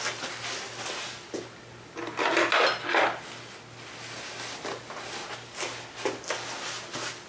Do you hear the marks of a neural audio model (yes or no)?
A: no